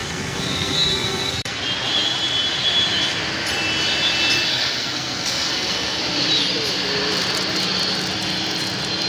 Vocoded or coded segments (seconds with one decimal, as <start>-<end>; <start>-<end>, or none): 0.0-1.6; 4.5-6.0